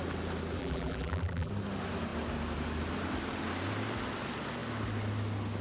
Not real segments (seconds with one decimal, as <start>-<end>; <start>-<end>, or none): 0.6-1.5